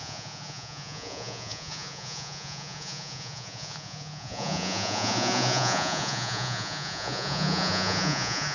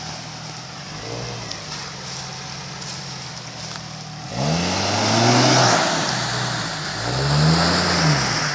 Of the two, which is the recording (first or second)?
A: second